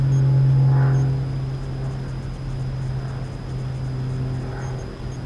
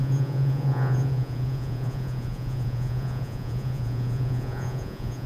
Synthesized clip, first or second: second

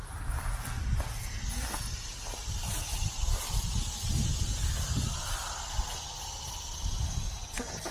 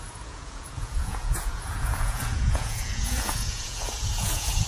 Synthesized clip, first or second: second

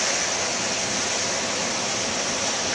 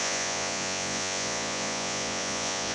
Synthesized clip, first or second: second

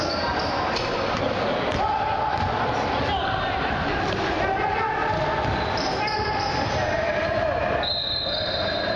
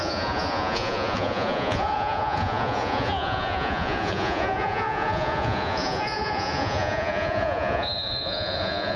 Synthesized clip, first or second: second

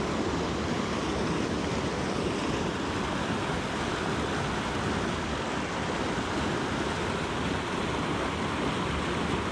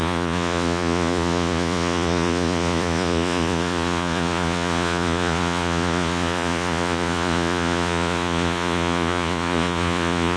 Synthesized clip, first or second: second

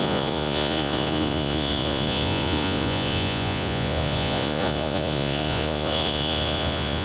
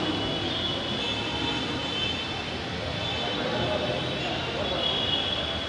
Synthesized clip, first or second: first